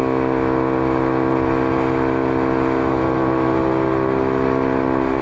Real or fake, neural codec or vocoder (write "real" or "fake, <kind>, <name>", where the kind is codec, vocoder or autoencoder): real